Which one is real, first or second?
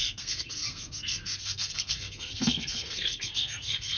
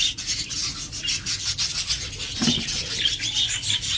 second